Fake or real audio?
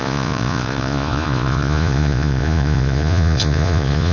fake